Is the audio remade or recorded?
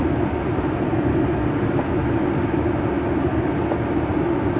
recorded